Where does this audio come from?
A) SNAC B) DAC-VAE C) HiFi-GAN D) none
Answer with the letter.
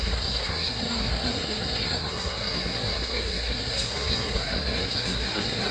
A